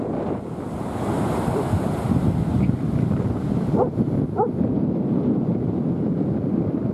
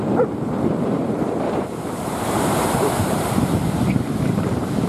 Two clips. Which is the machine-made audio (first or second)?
second